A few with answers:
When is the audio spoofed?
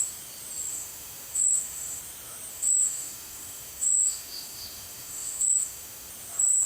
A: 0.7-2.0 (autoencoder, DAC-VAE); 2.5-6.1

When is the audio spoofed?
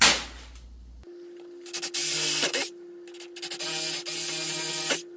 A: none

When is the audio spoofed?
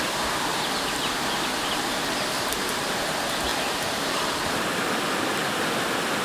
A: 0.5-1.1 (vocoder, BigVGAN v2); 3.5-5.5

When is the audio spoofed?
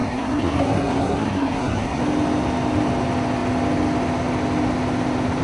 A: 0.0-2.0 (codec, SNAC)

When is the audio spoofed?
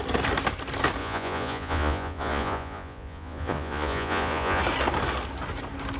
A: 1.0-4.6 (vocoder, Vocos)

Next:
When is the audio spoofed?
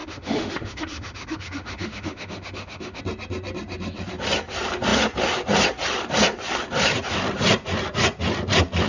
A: 0.0-3.0 (autoencoder, DAC-VAE)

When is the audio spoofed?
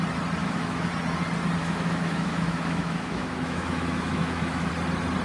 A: 0.4-0.9 (autoencoder, DAC-VAE); 1.6-4.7